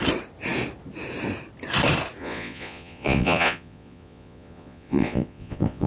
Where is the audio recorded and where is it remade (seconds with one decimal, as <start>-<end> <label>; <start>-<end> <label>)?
0.0-2.2 recorded; 2.2-5.9 remade